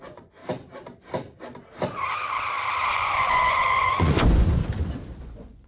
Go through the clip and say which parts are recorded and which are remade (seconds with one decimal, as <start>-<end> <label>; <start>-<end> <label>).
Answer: 0.0-0.4 remade; 0.4-2.9 recorded; 2.9-4.6 remade; 4.6-5.2 recorded; 5.2-5.7 remade